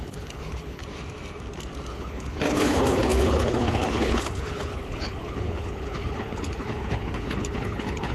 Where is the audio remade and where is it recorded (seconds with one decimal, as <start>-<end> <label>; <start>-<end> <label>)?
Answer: 0.0-0.8 remade; 0.8-1.9 recorded; 1.9-8.1 remade